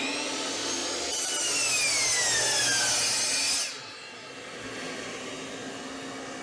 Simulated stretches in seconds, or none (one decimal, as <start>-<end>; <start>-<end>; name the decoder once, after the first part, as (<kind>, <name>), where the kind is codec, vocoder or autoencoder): none